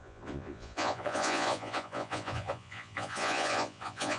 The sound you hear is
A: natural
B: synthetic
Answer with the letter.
B